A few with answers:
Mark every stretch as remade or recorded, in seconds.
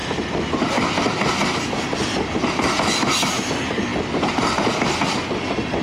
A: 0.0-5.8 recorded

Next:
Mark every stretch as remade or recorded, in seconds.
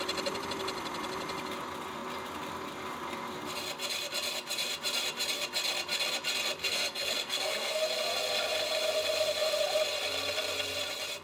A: 0.0-6.6 recorded; 6.6-7.8 remade; 7.8-11.2 recorded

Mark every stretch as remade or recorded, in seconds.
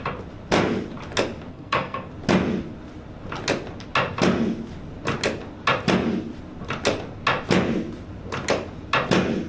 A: 0.0-1.5 recorded; 1.5-2.1 remade; 2.1-9.5 recorded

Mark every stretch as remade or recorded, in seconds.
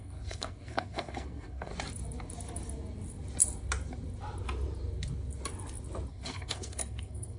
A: 0.0-1.7 remade; 1.7-6.1 recorded; 6.1-7.4 remade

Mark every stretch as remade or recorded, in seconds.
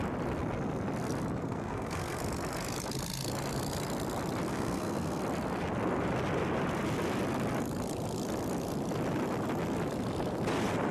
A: 0.0-1.4 recorded; 1.4-2.2 remade; 2.2-4.5 recorded; 4.5-5.2 remade; 5.2-10.9 recorded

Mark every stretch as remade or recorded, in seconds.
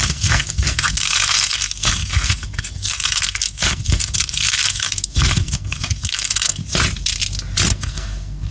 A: 0.0-6.6 remade; 6.6-7.7 recorded; 7.7-8.5 remade